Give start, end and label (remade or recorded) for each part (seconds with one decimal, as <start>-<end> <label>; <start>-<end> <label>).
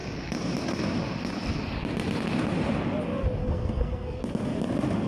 0.0-3.4 recorded; 3.4-4.2 remade; 4.2-5.1 recorded